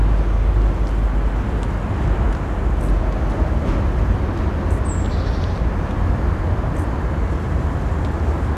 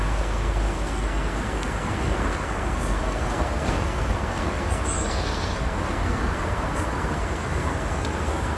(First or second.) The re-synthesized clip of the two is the second